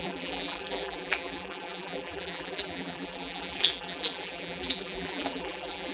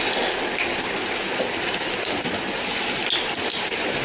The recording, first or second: second